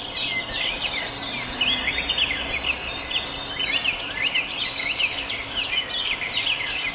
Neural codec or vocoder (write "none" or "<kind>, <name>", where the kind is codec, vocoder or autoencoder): none